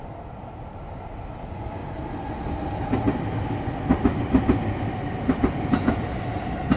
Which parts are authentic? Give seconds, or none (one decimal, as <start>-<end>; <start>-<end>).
0.0-6.8